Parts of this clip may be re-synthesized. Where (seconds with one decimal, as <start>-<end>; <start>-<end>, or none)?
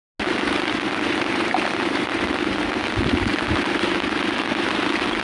none